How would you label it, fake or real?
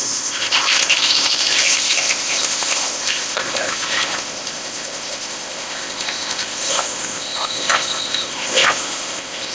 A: fake